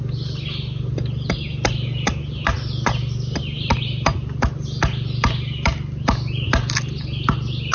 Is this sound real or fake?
real